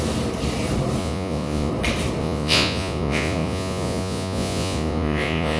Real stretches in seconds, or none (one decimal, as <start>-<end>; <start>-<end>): 0.0-1.0; 1.7-2.2